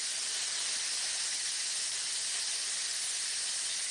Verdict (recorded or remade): recorded